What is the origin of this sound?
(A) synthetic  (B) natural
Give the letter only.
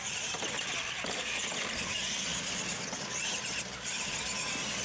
B